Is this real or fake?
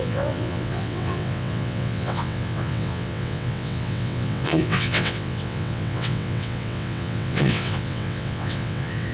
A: fake